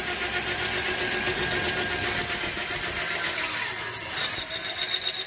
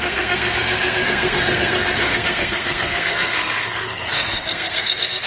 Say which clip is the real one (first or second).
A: first